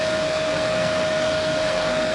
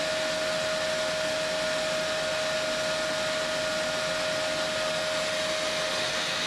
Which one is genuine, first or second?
second